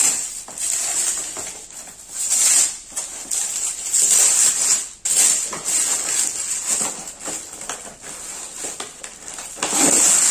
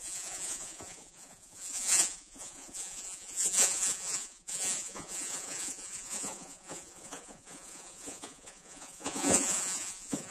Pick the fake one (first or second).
second